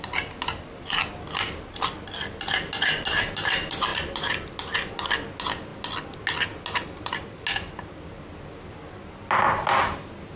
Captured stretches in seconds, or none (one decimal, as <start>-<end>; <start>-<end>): 0.0-10.4